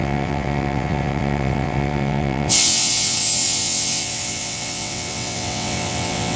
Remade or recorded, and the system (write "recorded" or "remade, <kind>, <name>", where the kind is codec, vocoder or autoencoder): remade, vocoder, WaveNeXt